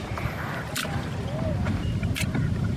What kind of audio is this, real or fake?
fake